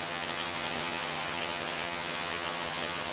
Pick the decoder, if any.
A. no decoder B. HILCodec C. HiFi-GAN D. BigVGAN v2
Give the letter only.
C